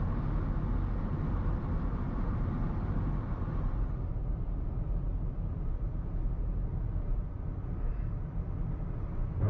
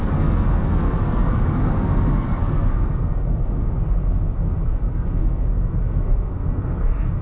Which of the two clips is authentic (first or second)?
first